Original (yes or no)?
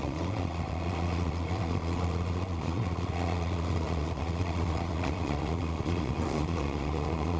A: no